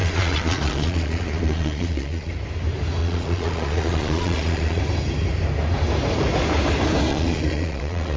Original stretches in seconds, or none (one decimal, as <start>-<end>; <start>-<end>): 2.3-3.0; 4.8-7.1